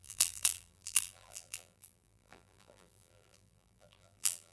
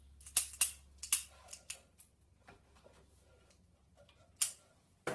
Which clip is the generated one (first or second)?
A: first